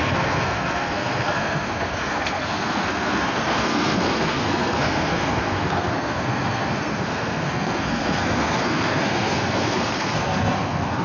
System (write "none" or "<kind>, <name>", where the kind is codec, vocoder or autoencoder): codec, SNAC